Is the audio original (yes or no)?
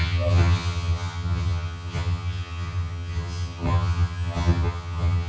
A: no